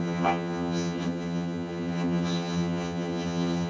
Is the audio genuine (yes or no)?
no